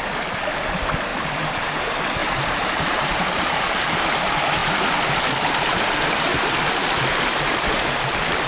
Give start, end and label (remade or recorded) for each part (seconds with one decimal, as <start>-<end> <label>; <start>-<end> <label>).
0.0-1.1 recorded; 1.1-1.7 remade; 1.7-2.2 recorded; 2.2-3.6 remade; 3.6-6.3 recorded; 6.3-7.0 remade; 7.0-8.5 recorded